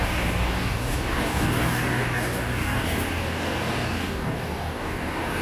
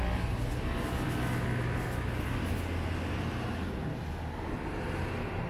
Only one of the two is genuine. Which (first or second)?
second